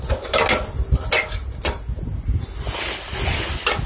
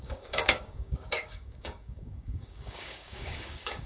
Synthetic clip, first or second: second